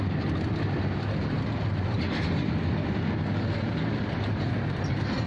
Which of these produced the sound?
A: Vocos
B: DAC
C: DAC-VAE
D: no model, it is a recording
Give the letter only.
D